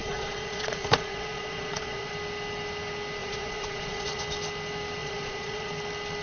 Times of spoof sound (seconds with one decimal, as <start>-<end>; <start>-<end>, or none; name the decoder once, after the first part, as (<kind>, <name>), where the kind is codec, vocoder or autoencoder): 0.0-2.1 (vocoder, Vocos); 3.2-4.2; 5.0-5.7